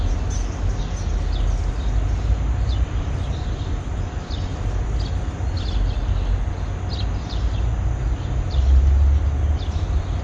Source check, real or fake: real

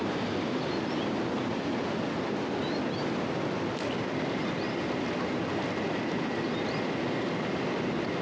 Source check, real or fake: real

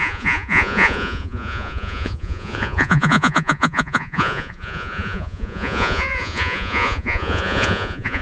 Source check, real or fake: fake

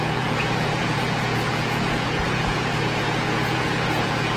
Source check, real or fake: fake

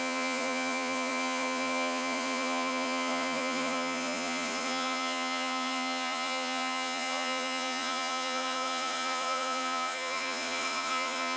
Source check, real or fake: fake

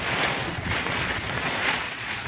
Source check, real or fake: fake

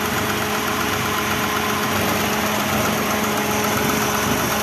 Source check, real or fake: real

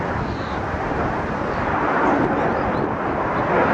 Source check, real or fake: real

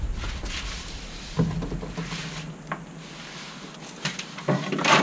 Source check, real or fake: real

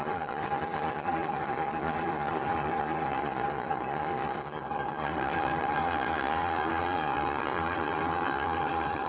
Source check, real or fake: fake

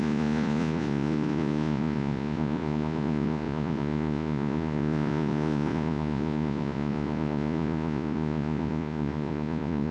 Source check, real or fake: fake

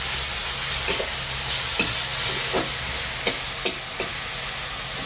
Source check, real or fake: real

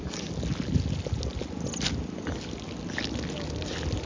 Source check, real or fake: real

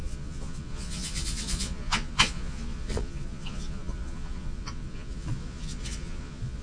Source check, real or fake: fake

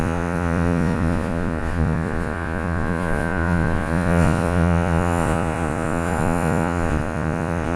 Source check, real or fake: fake